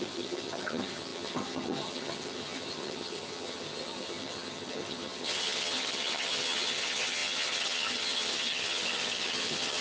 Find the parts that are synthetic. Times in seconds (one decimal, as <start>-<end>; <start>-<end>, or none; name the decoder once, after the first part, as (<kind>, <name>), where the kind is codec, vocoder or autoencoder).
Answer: 0.0-9.8 (vocoder, HiFi-GAN)